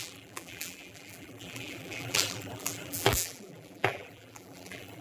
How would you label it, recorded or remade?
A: remade